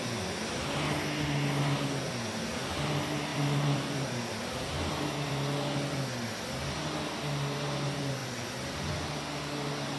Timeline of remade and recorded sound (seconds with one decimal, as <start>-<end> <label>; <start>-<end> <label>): 0.0-3.3 recorded; 3.3-5.3 remade; 5.3-8.2 recorded; 8.2-10.0 remade